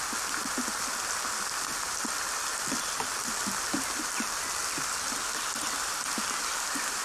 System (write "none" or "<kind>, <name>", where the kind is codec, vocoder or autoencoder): none